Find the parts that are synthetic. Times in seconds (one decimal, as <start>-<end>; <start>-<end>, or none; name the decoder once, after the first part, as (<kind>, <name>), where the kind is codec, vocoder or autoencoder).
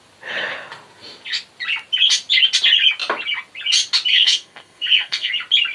4.1-5.3 (codec, SNAC)